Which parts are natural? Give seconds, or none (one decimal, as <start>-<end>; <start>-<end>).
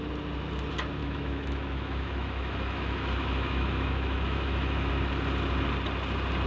0.0-1.0; 4.9-6.5